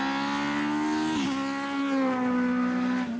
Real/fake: real